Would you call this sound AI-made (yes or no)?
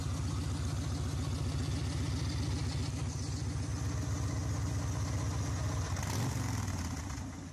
no